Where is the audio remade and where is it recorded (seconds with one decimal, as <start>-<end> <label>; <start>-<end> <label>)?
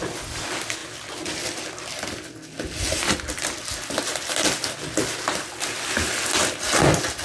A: 0.0-7.2 recorded